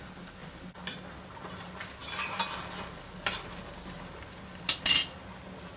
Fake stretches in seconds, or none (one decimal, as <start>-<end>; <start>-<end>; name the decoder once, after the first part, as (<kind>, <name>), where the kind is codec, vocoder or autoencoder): none